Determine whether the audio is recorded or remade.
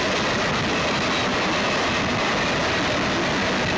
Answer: recorded